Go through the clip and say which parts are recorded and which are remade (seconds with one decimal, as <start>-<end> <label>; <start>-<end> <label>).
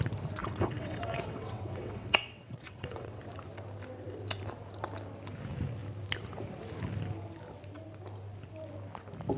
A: 0.0-0.4 recorded; 0.4-3.2 remade; 3.2-9.4 recorded